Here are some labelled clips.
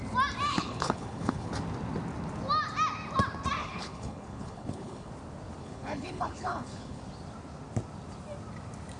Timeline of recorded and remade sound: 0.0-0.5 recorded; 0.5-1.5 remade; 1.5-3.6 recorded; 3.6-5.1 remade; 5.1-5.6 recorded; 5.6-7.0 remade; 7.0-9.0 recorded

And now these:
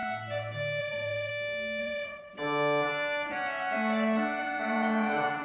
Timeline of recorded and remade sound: 0.0-0.8 recorded; 0.8-1.3 remade; 1.3-1.8 recorded; 1.8-2.3 remade; 2.3-4.4 recorded; 4.4-5.4 remade

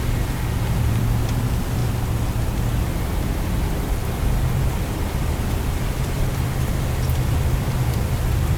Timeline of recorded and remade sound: 0.0-1.8 remade; 1.8-3.4 recorded; 3.4-8.6 remade

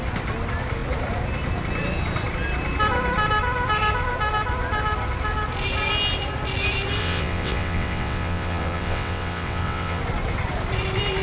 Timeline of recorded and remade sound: 0.0-7.0 recorded; 7.0-10.0 remade; 10.0-11.2 recorded

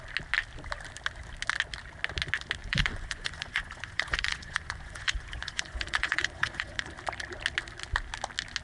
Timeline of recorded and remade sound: 0.0-2.6 recorded; 2.6-6.9 remade; 6.9-8.6 recorded